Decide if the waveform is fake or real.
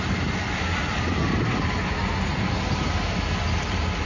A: real